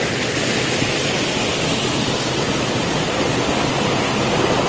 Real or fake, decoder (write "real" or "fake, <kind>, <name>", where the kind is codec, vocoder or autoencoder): real